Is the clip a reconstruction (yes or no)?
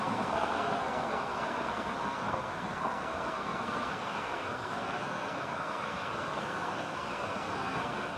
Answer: yes